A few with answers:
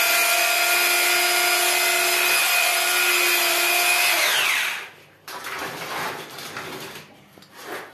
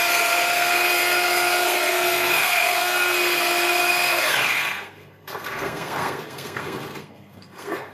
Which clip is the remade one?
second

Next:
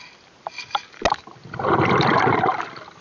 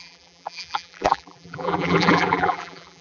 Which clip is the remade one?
second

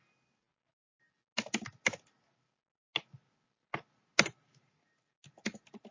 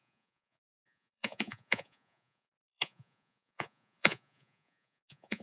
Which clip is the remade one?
second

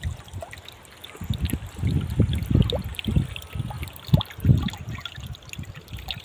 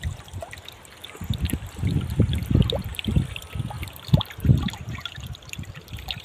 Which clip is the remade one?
second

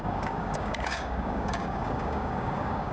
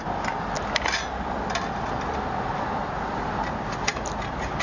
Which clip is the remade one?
first